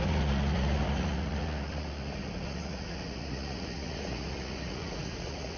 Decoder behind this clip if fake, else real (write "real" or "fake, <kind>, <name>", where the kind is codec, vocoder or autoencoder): fake, vocoder, Vocos